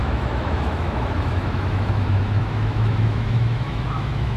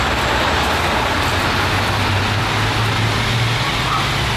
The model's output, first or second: first